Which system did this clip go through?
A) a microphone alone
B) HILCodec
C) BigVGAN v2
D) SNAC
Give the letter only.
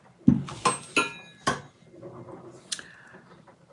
A